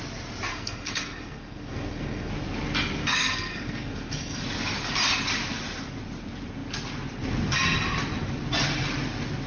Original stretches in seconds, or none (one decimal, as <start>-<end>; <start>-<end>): 0.0-0.5; 2.3-3.0; 4.4-9.5